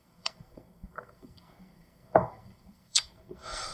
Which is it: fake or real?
fake